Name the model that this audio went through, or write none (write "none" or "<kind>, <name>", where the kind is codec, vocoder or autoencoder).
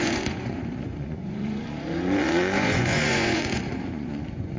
vocoder, Vocos